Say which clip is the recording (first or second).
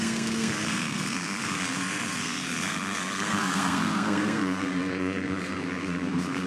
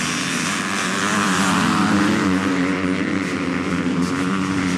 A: second